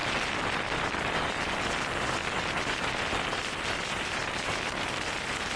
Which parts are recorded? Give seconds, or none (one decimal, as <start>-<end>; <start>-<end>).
0.0-5.6